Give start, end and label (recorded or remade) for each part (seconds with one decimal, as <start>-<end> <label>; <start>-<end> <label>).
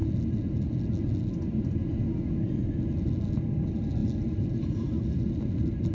0.0-3.5 recorded; 3.5-5.9 remade